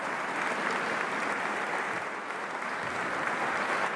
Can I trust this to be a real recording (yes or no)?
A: yes